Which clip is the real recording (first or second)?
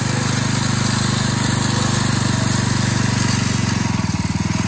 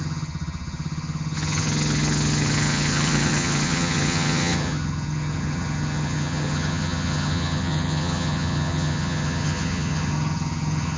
first